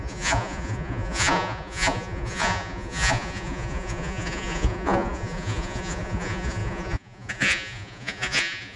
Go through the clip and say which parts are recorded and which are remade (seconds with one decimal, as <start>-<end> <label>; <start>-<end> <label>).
0.0-8.8 remade